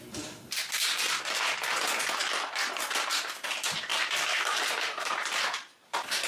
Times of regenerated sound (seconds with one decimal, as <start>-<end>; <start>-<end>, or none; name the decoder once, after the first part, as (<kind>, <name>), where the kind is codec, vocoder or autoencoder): 3.9-5.4 (vocoder, BigVGAN v2)